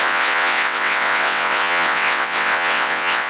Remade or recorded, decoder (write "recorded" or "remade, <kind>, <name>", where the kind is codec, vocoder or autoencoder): remade, vocoder, WaveNeXt